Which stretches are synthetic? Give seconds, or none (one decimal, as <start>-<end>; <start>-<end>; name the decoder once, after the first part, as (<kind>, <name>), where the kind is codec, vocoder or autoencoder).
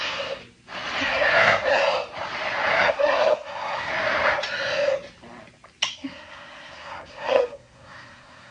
0.0-0.4 (codec, SNAC); 1.0-1.8; 2.7-3.9; 5.9-8.5